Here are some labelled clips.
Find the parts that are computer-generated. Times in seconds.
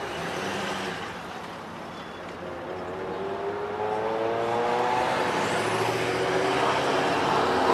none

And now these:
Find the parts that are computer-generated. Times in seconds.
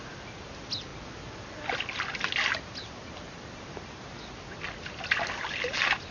none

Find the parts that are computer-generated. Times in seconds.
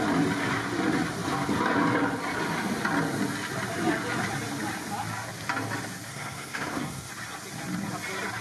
6.1-7.1 (codec, SNAC)